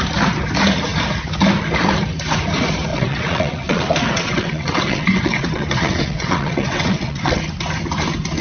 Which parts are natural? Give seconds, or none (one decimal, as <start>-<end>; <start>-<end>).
0.0-2.9; 7.4-8.4